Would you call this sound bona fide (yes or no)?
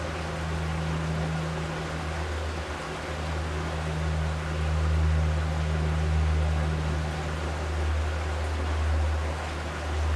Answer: yes